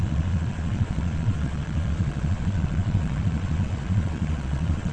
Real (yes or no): no